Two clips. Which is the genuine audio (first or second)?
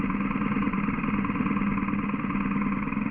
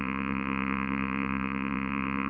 first